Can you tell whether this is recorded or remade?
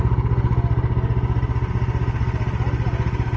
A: recorded